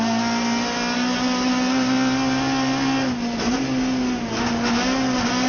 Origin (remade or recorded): recorded